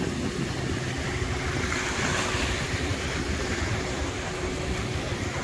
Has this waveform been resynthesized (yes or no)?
no